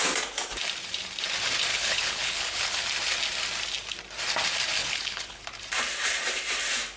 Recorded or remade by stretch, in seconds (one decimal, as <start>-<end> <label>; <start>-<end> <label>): 0.0-1.7 recorded; 1.7-2.8 remade; 2.8-4.8 recorded; 4.8-5.4 remade; 5.4-7.0 recorded